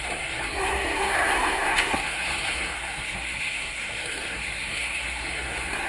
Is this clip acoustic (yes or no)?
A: no